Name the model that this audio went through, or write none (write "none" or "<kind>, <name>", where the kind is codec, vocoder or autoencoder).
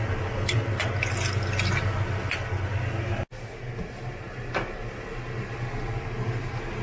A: none